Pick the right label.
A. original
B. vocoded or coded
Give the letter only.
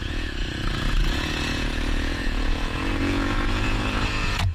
B